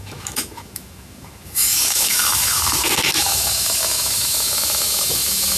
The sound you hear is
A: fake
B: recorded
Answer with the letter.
A